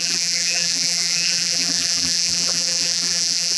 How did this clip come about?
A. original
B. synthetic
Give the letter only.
B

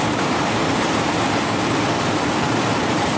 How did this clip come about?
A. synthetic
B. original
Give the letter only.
A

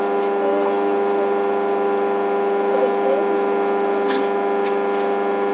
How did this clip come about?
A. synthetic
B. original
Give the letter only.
B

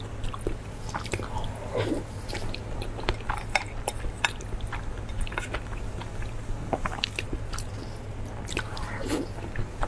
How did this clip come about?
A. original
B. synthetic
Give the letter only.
A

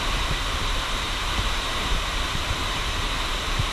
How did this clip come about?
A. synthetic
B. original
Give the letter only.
A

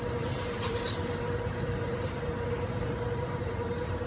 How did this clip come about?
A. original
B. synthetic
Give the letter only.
B